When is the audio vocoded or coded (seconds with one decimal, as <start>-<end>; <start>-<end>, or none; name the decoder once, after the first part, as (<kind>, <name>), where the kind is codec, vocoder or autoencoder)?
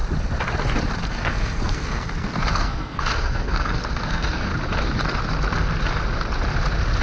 1.1-4.5 (codec, SNAC)